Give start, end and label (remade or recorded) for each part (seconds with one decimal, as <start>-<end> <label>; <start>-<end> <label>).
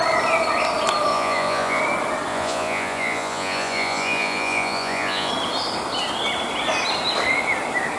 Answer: 0.0-1.1 recorded; 1.1-1.8 remade; 1.8-2.3 recorded; 2.3-5.3 remade; 5.3-8.0 recorded